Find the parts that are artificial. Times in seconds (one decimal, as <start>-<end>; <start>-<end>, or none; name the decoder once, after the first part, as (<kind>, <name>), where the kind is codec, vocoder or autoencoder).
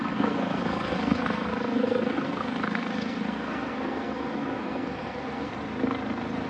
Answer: 0.0-5.5 (codec, SNAC)